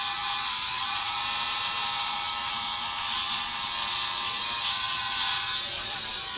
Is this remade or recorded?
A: remade